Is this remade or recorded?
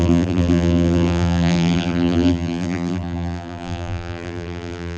remade